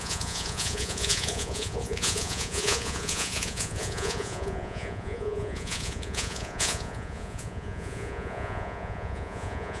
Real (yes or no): no